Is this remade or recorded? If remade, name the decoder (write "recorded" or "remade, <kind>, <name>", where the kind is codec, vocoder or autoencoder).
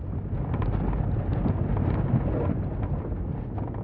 recorded